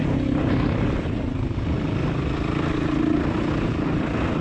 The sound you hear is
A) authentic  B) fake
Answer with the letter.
A